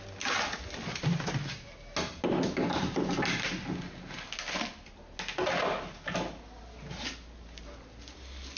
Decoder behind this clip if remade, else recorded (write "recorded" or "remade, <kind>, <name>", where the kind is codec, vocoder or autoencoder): recorded